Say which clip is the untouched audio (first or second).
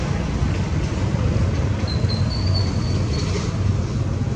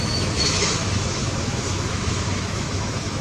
first